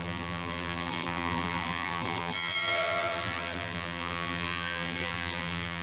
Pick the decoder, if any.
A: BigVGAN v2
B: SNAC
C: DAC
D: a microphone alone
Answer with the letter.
A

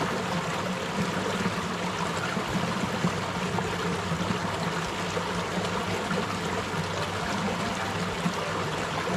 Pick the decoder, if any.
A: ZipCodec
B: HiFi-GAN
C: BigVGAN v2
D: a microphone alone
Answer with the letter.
D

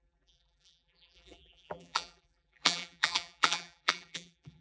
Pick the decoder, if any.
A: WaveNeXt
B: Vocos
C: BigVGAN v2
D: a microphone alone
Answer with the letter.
C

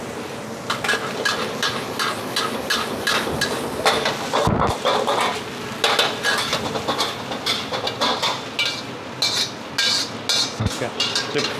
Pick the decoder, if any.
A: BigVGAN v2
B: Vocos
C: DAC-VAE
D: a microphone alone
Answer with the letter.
D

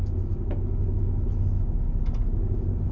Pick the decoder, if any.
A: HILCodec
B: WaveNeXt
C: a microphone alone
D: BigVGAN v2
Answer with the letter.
C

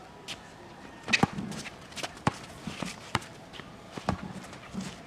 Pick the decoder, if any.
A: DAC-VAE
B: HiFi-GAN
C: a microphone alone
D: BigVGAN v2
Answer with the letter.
C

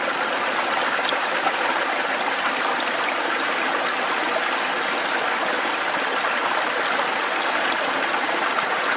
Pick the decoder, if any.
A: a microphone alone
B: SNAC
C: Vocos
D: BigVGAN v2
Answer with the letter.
A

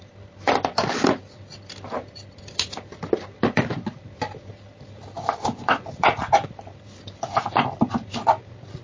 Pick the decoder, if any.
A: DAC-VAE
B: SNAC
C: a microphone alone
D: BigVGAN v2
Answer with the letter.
D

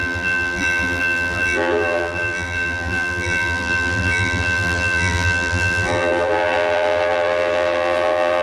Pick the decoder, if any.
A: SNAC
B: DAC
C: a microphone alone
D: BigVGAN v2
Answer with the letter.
D